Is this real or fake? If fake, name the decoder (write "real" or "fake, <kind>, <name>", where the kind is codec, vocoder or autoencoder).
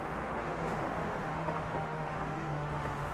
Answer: fake, autoencoder, DAC-VAE